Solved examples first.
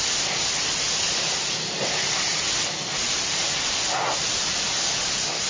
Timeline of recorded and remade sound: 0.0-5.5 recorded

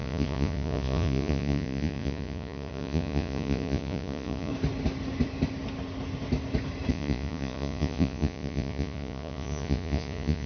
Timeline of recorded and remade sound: 0.0-4.5 remade; 4.5-6.9 recorded; 6.9-10.5 remade

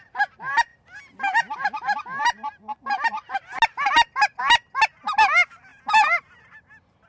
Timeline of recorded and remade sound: 0.0-7.1 recorded

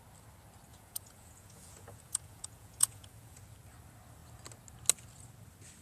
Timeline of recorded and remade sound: 0.0-0.7 recorded; 0.7-3.4 remade; 3.4-5.8 recorded

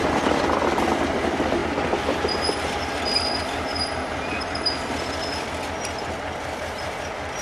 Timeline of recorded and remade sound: 0.0-7.4 recorded

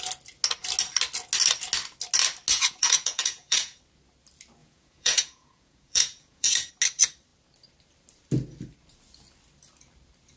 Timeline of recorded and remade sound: 0.0-2.5 recorded; 2.5-3.8 remade; 3.8-4.6 recorded; 4.6-6.7 remade; 6.7-10.4 recorded

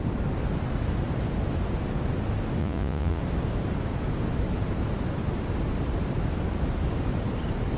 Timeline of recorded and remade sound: 0.0-2.6 recorded; 2.6-3.2 remade; 3.2-7.8 recorded